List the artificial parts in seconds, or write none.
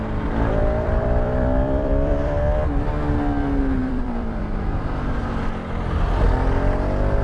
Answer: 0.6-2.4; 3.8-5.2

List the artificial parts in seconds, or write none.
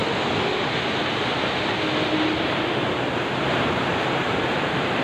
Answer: 2.4-5.0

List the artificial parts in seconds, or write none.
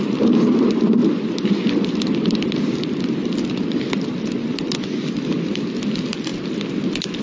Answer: 0.0-6.3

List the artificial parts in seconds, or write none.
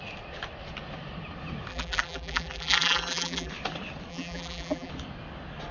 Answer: 1.7-3.5; 4.1-4.9